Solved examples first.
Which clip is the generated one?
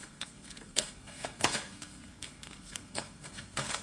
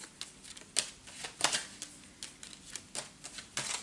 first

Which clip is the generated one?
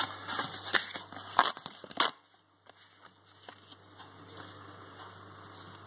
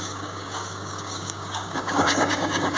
second